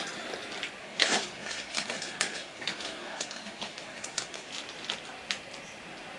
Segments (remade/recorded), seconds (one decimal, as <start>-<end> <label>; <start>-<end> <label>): 0.0-0.8 recorded; 0.8-4.5 remade; 4.5-6.2 recorded

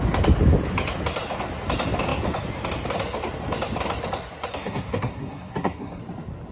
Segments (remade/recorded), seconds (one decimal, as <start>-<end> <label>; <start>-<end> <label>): 0.0-4.5 recorded; 4.5-6.0 remade; 6.0-6.5 recorded

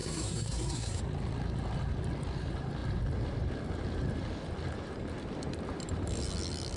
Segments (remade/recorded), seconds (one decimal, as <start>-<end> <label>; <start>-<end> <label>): 0.0-1.0 remade; 1.0-6.8 recorded

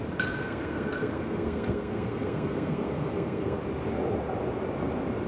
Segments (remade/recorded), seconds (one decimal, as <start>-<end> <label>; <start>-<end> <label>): 0.0-0.4 recorded; 0.4-3.6 remade; 3.6-5.3 recorded